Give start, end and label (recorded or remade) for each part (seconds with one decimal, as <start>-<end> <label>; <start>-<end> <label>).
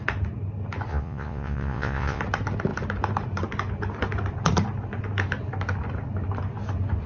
0.0-0.9 recorded; 0.9-2.2 remade; 2.2-7.1 recorded